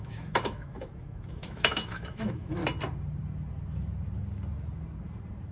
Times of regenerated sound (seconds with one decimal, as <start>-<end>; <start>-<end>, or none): 0.0-2.6